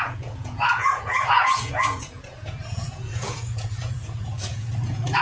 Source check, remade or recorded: remade